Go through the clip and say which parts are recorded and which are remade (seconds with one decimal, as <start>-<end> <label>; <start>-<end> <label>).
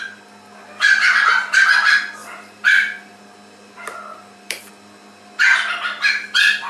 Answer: 0.0-2.2 recorded; 2.2-3.2 remade; 3.2-4.1 recorded; 4.1-4.7 remade; 4.7-6.7 recorded